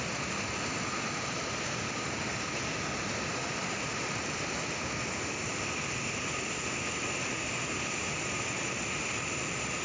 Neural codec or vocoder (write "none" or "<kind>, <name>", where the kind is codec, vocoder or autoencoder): none